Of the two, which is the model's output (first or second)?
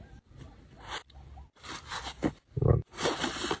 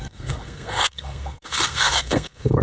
second